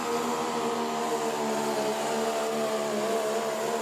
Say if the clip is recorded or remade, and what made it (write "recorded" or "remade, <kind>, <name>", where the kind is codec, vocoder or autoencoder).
recorded